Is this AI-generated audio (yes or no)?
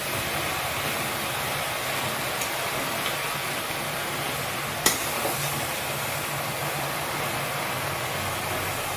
no